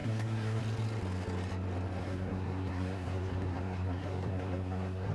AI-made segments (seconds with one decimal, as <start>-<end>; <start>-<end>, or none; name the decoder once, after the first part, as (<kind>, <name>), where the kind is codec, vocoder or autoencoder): 0.0-0.6 (codec, SNAC); 2.0-5.1